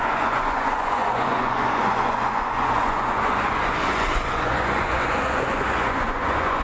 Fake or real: fake